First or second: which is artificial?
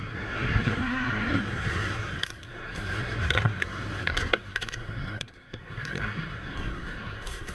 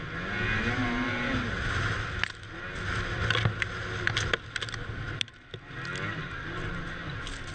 first